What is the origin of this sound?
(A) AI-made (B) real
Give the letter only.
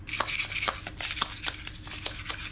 B